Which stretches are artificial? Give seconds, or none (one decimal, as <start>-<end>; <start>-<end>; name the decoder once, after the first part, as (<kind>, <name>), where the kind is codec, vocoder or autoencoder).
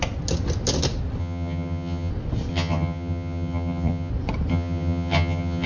1.2-2.1 (vocoder, HiFi-GAN); 2.5-4.1; 4.5-5.7